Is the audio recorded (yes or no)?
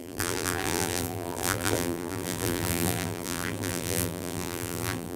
no